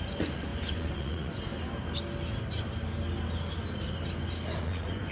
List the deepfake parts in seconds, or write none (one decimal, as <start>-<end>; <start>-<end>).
0.0-1.5; 4.6-5.1